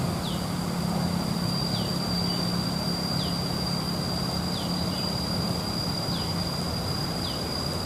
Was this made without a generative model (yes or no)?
yes